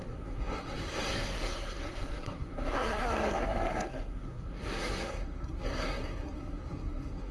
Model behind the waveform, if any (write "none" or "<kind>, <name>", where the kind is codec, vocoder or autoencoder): codec, SNAC